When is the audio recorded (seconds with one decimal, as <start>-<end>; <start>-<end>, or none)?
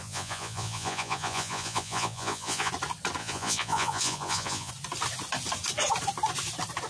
2.7-3.2; 4.7-6.9